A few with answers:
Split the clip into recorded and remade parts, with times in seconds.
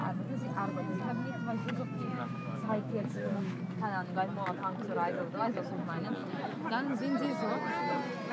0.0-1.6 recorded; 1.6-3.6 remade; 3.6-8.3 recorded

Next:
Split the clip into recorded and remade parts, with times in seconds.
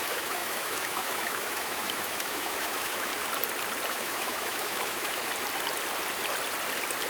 0.0-3.1 remade; 3.1-3.9 recorded; 3.9-5.2 remade; 5.2-7.1 recorded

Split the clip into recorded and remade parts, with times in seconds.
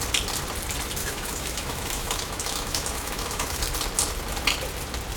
0.0-1.0 recorded; 1.0-3.6 remade; 3.6-5.2 recorded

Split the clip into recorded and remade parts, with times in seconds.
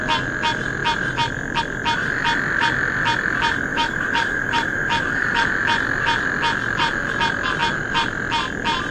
0.0-3.7 recorded; 3.7-5.5 remade; 5.5-8.9 recorded